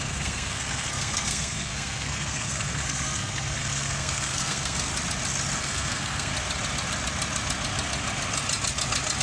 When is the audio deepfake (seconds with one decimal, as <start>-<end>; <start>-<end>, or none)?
0.0-4.9; 5.6-6.3